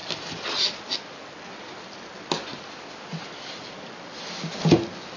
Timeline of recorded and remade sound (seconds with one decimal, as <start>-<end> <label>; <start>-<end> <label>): 0.0-2.5 recorded; 2.5-3.1 remade; 3.1-5.2 recorded